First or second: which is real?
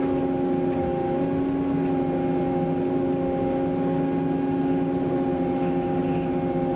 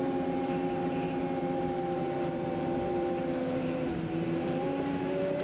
first